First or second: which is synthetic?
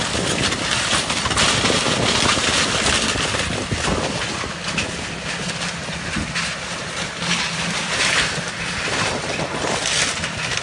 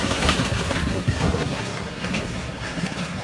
second